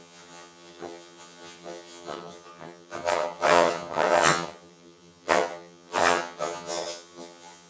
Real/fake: fake